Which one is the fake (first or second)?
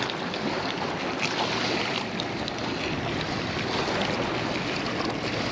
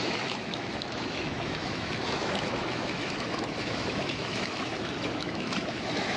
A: second